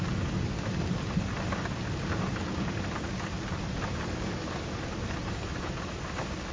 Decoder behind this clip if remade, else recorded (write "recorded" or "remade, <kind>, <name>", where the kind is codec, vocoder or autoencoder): recorded